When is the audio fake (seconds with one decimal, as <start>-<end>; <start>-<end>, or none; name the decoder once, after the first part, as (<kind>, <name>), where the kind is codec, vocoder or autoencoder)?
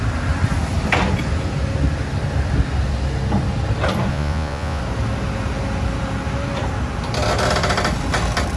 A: 4.1-4.8 (vocoder, Vocos)